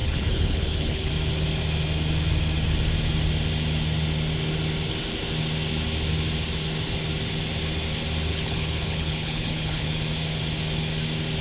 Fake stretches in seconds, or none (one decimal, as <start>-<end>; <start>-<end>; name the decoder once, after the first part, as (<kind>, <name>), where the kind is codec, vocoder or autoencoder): 0.0-1.1 (codec, HILCodec); 8.3-9.9